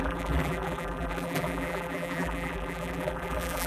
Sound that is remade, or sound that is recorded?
remade